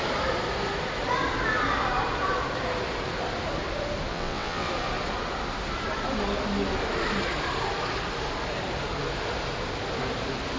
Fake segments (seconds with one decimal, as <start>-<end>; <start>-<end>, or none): 4.1-4.7